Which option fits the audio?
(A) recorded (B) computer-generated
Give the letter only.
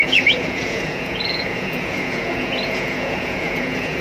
B